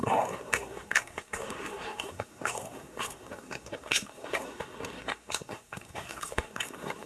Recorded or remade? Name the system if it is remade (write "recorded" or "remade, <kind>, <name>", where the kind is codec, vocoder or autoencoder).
remade, codec, SNAC